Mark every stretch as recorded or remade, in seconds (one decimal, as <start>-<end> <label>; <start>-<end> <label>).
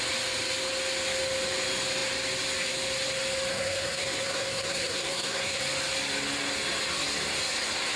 0.0-3.5 recorded; 3.5-5.6 remade; 5.6-8.0 recorded